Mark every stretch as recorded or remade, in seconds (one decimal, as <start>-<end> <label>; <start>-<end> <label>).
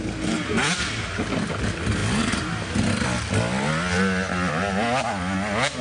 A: 0.0-5.8 recorded